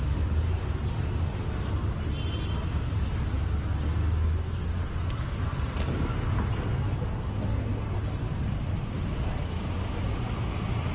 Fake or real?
real